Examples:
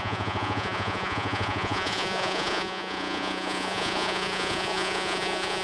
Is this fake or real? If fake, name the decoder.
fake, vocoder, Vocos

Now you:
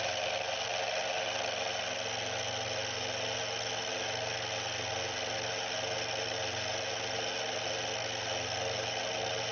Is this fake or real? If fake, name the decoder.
real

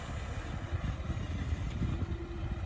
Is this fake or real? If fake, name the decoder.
real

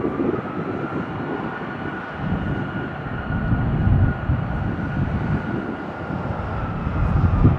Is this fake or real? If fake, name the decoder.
real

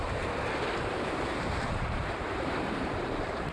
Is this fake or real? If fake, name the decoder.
fake, vocoder, BigVGAN v2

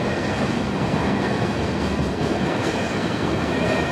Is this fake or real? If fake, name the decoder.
fake, codec, SNAC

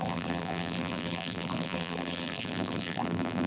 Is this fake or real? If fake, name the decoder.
fake, vocoder, BigVGAN v2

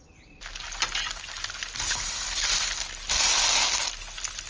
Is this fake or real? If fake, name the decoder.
real